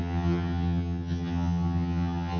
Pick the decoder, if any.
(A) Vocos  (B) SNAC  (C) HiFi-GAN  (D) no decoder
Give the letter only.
C